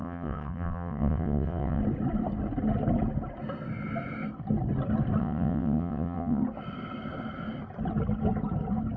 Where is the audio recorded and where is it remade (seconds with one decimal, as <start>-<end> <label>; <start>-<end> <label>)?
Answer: 0.0-1.8 remade; 1.8-5.2 recorded; 5.2-6.4 remade; 6.4-9.0 recorded